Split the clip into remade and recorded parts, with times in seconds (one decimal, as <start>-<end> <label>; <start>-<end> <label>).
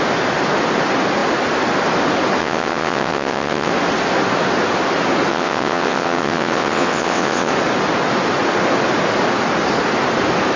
0.0-2.4 recorded; 2.4-3.7 remade; 3.7-5.3 recorded; 5.3-7.5 remade; 7.5-10.6 recorded